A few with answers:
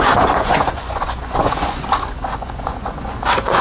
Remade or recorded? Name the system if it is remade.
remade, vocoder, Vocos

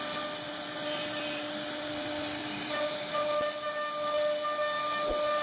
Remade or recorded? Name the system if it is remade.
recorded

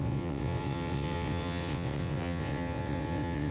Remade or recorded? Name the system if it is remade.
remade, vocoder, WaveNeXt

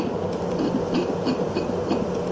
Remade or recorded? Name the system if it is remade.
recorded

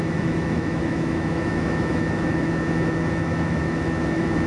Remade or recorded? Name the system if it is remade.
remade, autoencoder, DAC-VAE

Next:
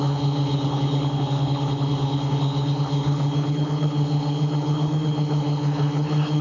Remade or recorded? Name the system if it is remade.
remade, codec, HILCodec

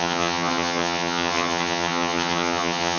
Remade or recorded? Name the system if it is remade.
remade, vocoder, HiFi-GAN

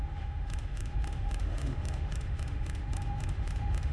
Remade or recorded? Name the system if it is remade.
remade, autoencoder, DAC-VAE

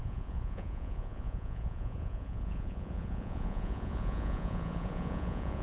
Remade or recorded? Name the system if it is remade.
remade, vocoder, Vocos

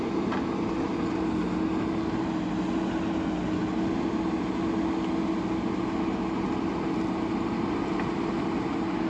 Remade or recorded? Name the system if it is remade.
recorded